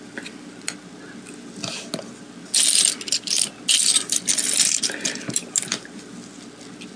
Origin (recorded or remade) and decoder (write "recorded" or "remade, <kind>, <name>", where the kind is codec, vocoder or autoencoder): recorded